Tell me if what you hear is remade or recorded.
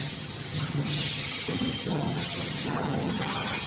remade